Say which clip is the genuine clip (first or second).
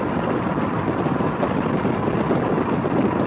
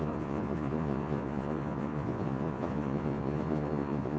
first